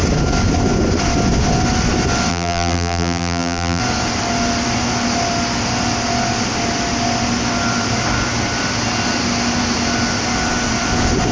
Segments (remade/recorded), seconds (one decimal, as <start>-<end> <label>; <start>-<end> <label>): 0.0-2.3 recorded; 2.3-3.8 remade; 3.8-11.3 recorded